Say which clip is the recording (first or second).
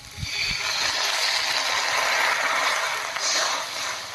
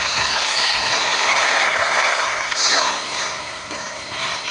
first